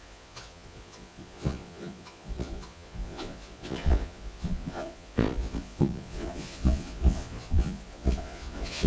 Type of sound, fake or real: fake